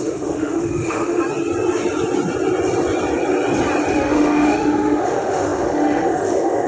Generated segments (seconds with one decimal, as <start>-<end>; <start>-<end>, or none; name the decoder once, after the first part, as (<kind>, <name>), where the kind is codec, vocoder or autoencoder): 0.0-1.2 (autoencoder, DAC-VAE); 3.9-6.7